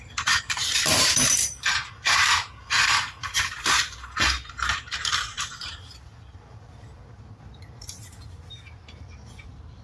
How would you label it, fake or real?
fake